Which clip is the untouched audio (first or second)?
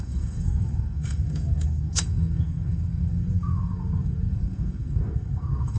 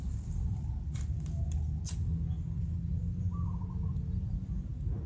second